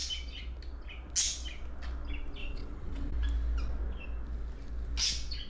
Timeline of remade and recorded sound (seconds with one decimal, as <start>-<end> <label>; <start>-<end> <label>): 0.0-2.4 recorded; 2.4-3.1 remade; 3.1-5.5 recorded